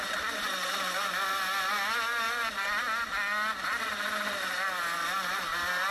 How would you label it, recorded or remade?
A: recorded